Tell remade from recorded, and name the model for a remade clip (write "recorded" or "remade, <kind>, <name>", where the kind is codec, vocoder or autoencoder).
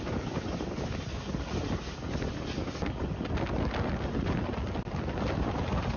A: recorded